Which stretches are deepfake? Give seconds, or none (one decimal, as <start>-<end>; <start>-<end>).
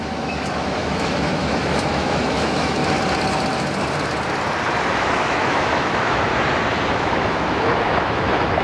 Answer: 0.0-2.8; 4.9-6.3; 6.9-8.6